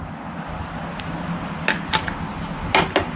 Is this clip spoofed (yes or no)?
no